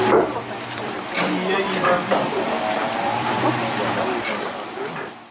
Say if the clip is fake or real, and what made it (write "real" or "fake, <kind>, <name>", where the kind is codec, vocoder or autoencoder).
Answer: fake, vocoder, BigVGAN v2